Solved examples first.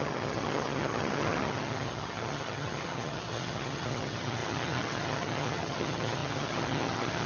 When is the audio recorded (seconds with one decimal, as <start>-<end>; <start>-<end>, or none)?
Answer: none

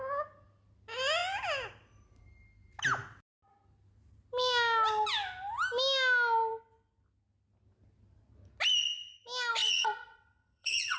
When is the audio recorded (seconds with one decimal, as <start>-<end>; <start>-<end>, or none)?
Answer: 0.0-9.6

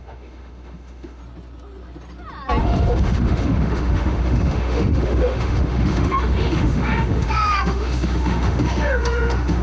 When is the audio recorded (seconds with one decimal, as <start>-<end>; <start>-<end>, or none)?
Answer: 1.2-2.6

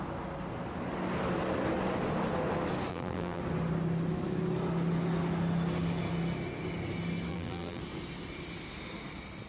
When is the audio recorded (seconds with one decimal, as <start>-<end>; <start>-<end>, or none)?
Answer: 0.0-2.9; 3.4-7.3; 7.8-9.5

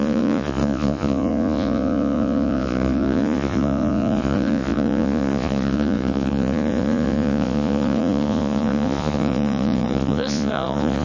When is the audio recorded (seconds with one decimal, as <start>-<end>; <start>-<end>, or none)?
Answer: none

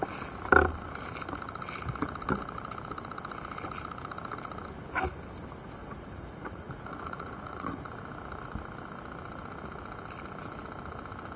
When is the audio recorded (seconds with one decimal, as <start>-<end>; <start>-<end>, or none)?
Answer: 0.0-5.8; 7.8-11.4